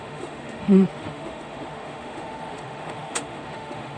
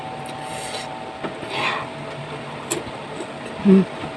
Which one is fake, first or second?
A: first